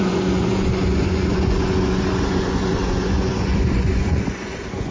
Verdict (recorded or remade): remade